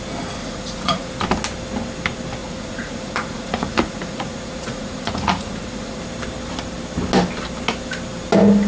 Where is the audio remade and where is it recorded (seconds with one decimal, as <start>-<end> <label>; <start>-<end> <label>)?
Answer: 0.0-0.4 recorded; 0.4-1.1 remade; 1.1-2.4 recorded; 2.4-6.0 remade; 6.0-8.7 recorded